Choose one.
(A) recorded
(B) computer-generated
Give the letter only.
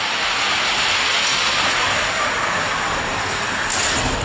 A